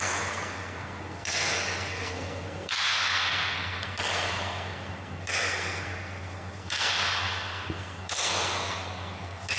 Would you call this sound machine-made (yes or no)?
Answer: yes